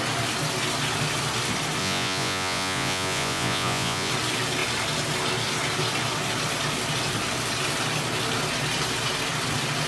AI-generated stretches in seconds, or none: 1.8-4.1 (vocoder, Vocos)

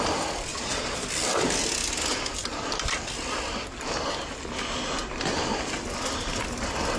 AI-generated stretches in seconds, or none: 0.5-1.1 (vocoder, Vocos)

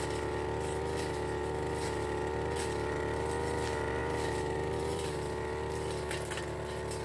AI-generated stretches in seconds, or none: 4.0-6.4 (vocoder, BigVGAN v2)

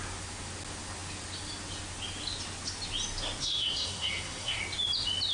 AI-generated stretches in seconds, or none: 3.4-4.6 (codec, SNAC)

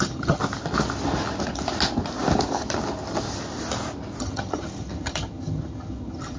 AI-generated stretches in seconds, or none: 0.0-0.4 (vocoder, HiFi-GAN); 4.2-6.4